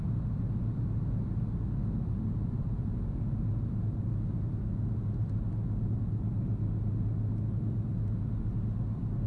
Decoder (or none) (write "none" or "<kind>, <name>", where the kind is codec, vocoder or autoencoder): none